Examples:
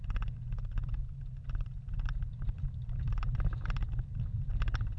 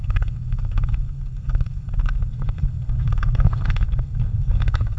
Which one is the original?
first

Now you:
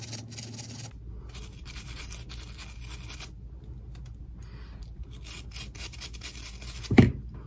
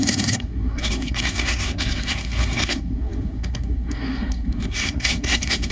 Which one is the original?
first